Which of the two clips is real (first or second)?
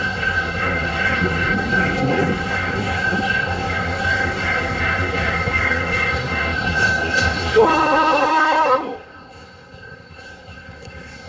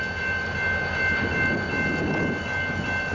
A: second